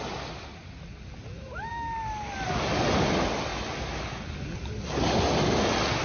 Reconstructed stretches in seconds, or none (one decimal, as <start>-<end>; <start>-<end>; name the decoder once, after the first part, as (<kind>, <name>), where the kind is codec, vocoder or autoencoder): 0.5-1.7 (vocoder, BigVGAN v2)